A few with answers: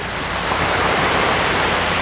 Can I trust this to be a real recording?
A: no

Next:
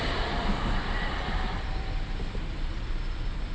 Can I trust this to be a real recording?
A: no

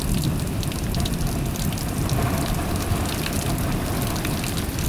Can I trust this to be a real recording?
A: no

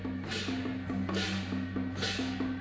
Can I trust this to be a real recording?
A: yes